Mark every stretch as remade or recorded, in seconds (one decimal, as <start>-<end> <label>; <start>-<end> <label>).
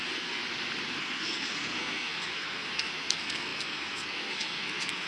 0.0-0.4 remade; 0.4-1.0 recorded; 1.0-5.1 remade